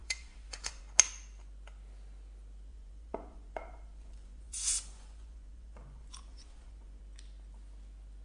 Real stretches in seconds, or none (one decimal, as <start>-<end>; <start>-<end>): 0.8-2.7; 7.0-8.2